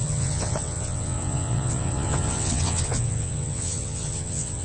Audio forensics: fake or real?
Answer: fake